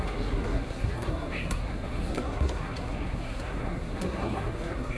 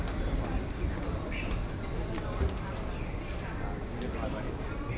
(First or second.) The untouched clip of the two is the second